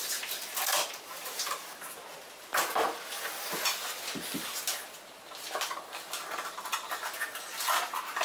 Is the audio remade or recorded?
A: recorded